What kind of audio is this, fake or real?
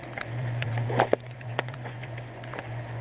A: fake